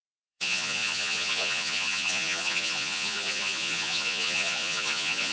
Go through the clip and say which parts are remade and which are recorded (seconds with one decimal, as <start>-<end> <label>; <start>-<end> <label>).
0.0-5.3 remade